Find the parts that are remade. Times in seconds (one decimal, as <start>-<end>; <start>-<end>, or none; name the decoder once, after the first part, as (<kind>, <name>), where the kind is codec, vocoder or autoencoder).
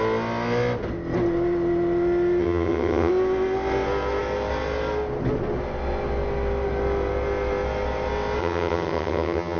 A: 2.4-3.1 (vocoder, HiFi-GAN); 8.4-9.6